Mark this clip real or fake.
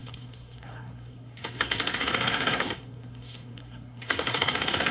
fake